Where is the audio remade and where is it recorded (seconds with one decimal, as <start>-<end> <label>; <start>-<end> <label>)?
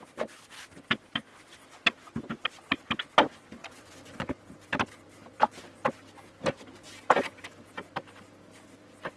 0.0-3.6 recorded; 3.6-4.3 remade; 4.3-9.2 recorded